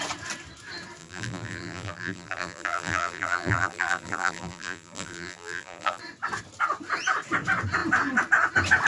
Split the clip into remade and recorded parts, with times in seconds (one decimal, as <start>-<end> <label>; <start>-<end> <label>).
0.0-1.0 recorded; 1.0-6.0 remade; 6.0-8.9 recorded

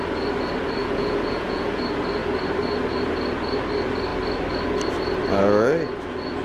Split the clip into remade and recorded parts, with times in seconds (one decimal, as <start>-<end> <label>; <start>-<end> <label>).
0.0-0.8 recorded; 0.8-1.8 remade; 1.8-6.4 recorded

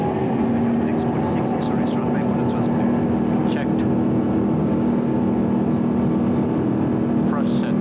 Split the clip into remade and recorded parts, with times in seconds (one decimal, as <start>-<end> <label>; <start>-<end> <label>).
0.0-4.6 recorded; 4.6-5.2 remade; 5.2-7.8 recorded

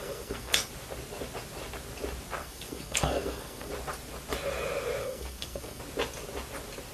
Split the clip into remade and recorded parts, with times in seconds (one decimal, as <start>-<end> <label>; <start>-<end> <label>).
0.0-0.7 remade; 0.7-2.4 recorded; 2.4-3.7 remade; 3.7-5.0 recorded; 5.0-5.8 remade; 5.8-6.9 recorded

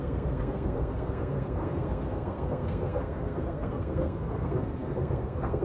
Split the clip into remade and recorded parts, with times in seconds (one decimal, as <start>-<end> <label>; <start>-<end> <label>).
0.0-5.6 remade

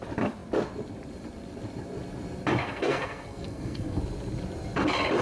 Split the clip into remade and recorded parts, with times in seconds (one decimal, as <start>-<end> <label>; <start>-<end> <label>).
0.0-2.6 recorded; 2.6-4.0 remade; 4.0-5.2 recorded